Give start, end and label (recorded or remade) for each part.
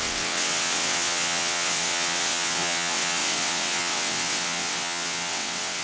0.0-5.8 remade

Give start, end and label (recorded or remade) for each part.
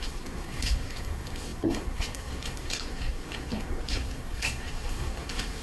0.0-5.6 remade